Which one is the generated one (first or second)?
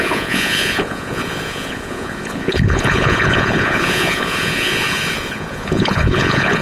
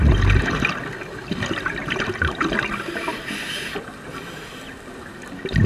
first